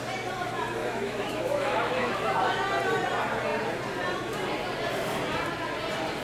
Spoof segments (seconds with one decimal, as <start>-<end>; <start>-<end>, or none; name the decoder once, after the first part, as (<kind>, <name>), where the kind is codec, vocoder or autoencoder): 0.8-2.1 (autoencoder, DAC-VAE)